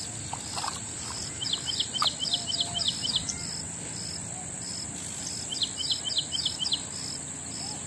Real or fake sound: real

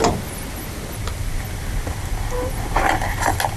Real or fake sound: real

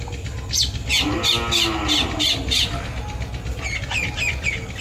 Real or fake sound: real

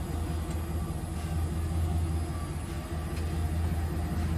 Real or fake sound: real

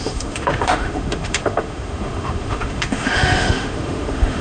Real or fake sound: fake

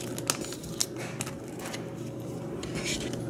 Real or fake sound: real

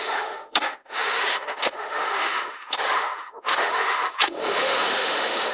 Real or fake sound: fake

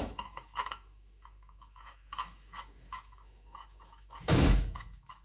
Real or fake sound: fake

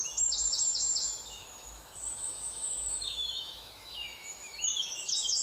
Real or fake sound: fake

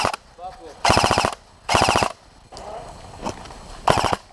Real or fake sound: real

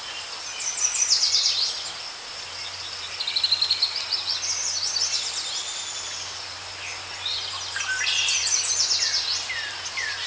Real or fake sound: real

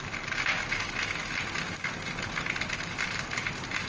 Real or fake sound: real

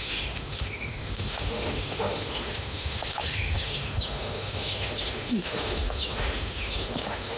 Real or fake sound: fake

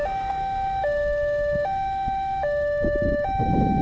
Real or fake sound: fake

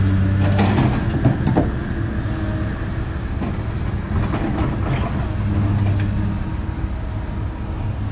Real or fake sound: real